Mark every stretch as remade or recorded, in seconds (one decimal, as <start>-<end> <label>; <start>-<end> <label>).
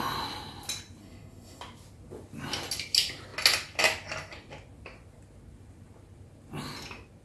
0.0-1.0 recorded; 1.0-1.6 remade; 1.6-7.2 recorded